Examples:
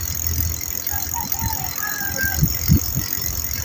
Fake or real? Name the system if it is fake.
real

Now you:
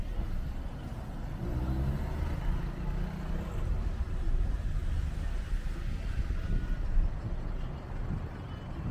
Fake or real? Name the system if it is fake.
real